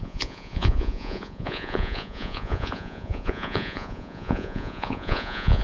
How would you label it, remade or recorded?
remade